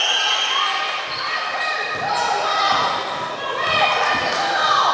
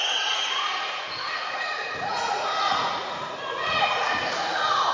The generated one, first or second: second